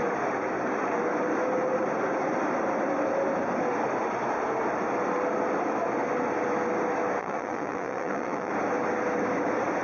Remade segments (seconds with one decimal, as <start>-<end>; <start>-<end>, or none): 7.2-8.5